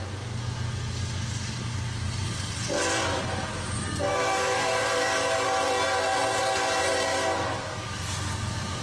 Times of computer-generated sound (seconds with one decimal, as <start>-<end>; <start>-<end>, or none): 4.1-4.8; 7.1-8.0